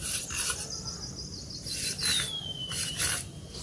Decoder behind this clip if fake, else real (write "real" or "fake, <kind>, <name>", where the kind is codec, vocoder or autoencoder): real